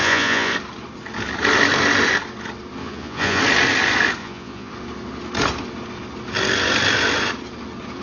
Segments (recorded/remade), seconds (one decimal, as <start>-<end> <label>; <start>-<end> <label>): 0.0-0.5 remade; 0.5-2.8 recorded; 2.8-3.4 remade; 3.4-4.2 recorded; 4.2-4.7 remade; 4.7-8.0 recorded